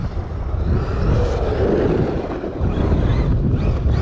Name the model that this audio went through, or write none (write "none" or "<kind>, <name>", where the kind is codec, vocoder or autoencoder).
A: none